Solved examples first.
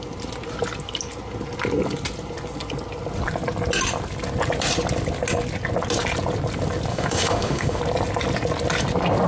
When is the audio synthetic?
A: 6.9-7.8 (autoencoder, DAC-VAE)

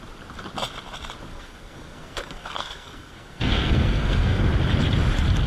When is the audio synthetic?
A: 1.3-4.4 (codec, SNAC)

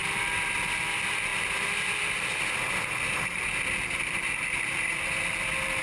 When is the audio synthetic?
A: 0.0-0.6 (vocoder, BigVGAN v2)

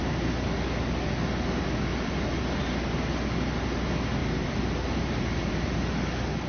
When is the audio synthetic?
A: 1.9-2.4 (vocoder, BigVGAN v2); 4.2-6.0

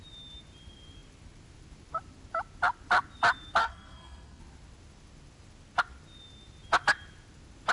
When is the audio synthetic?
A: 3.6-4.4 (codec, SNAC)

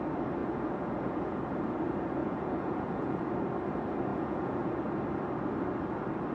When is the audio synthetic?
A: 0.4-1.4 (vocoder, Vocos); 2.2-3.2; 4.1-4.7